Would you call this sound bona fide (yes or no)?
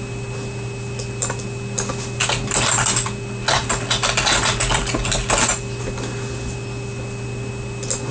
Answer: yes